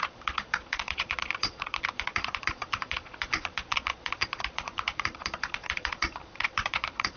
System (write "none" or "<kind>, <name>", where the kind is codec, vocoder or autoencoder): vocoder, Vocos